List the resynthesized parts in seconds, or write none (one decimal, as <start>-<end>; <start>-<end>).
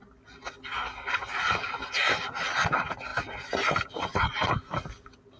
none